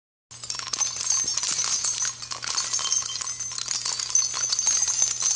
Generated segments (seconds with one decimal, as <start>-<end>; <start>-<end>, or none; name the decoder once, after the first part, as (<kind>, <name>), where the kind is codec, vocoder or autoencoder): none